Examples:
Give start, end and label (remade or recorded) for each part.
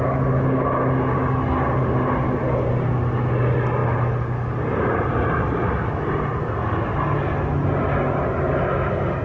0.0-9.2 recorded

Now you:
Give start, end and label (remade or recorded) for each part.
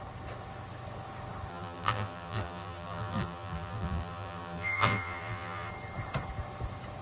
0.0-1.5 recorded; 1.5-5.7 remade; 5.7-7.0 recorded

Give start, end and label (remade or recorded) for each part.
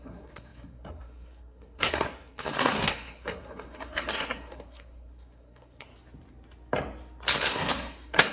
0.0-5.9 remade; 5.9-7.4 recorded; 7.4-8.3 remade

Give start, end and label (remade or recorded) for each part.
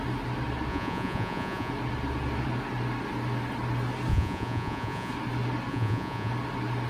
0.0-0.7 recorded; 0.7-1.7 remade; 1.7-4.1 recorded; 4.1-5.1 remade; 5.1-5.7 recorded; 5.7-6.3 remade; 6.3-6.9 recorded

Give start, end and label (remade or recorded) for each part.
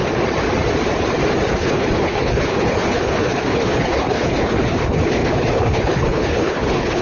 0.0-1.5 recorded; 1.5-7.0 remade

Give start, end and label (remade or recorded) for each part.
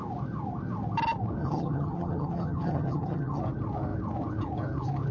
0.0-1.4 recorded; 1.4-3.4 remade; 3.4-5.1 recorded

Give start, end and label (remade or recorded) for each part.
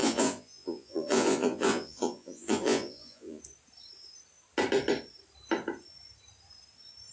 0.0-3.4 remade; 3.4-7.1 recorded